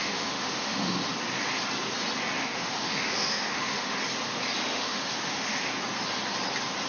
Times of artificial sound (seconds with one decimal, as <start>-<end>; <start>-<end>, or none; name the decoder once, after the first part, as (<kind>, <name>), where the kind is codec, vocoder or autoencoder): 0.0-1.0 (autoencoder, DAC-VAE); 2.4-4.0; 4.6-5.7